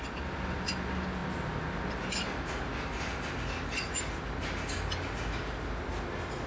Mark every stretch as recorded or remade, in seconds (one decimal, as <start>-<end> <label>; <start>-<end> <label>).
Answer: 0.0-6.5 recorded